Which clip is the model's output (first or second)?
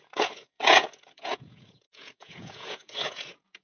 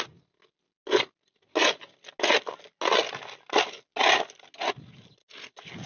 first